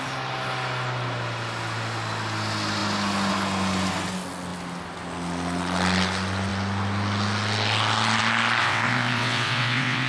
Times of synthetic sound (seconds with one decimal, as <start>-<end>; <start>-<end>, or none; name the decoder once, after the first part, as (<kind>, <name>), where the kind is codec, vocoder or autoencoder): 8.6-10.1 (vocoder, WaveNeXt)